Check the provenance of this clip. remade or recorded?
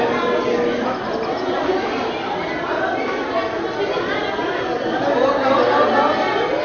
recorded